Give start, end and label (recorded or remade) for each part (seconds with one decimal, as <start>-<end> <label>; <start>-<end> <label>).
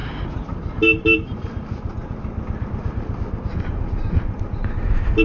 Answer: 0.0-5.2 recorded